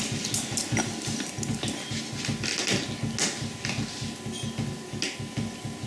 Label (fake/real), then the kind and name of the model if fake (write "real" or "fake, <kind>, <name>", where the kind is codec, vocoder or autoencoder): real